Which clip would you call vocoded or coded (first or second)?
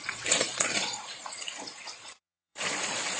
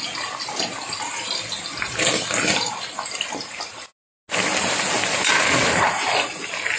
first